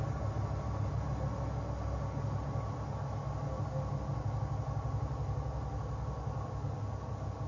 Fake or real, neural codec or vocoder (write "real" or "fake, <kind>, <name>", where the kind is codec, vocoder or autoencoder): real